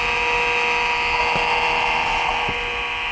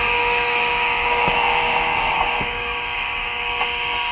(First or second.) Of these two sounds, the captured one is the first